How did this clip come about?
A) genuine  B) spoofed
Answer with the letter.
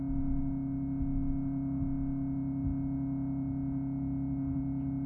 A